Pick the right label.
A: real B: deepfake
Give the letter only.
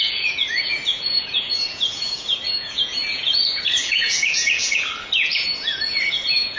B